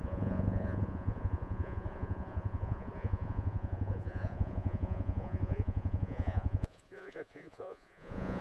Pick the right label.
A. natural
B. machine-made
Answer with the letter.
B